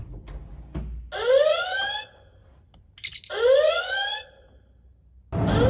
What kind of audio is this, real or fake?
real